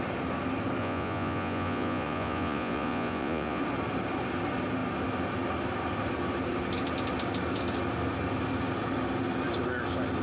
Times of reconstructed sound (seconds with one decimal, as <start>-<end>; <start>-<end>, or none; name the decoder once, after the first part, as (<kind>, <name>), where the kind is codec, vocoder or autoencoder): 0.8-3.6 (vocoder, Vocos)